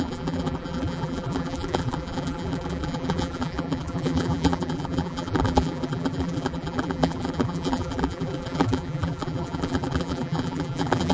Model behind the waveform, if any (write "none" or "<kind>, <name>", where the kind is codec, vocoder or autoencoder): vocoder, BigVGAN v2